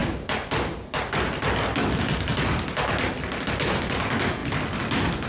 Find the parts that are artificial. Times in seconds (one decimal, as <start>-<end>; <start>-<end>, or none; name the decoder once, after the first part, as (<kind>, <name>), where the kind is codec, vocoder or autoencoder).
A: none